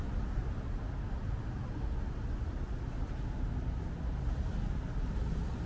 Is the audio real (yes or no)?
yes